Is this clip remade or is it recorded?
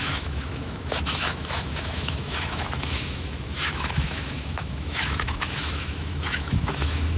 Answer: remade